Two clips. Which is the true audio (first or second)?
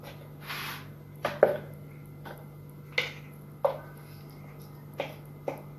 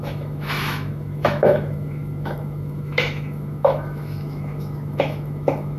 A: first